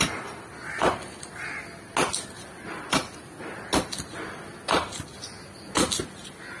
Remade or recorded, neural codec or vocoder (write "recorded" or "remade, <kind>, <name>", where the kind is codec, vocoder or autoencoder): recorded